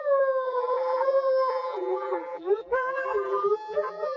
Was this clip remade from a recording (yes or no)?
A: yes